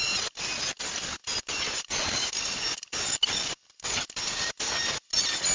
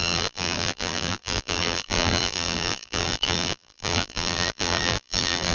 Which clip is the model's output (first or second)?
second